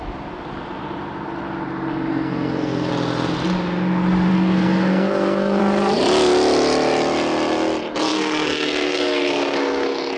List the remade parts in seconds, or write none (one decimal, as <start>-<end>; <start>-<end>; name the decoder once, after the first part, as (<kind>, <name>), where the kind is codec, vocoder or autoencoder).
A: 2.1-2.9 (codec, SNAC); 4.3-5.6; 8.1-10.2